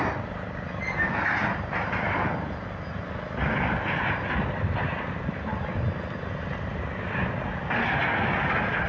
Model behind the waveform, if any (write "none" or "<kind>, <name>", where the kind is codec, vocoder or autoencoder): none